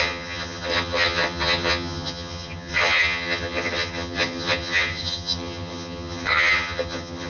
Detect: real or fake fake